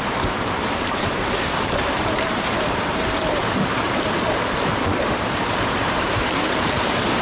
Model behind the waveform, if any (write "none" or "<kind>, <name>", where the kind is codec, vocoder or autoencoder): vocoder, BigVGAN v2